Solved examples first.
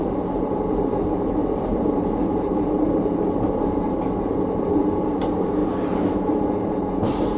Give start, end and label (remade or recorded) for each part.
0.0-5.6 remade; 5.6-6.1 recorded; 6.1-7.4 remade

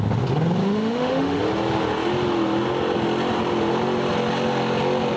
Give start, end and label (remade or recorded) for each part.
0.0-0.6 recorded; 0.6-1.4 remade; 1.4-5.2 recorded